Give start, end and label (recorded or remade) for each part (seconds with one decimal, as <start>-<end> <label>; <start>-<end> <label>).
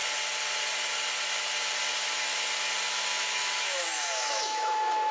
0.0-3.1 recorded; 3.1-5.1 remade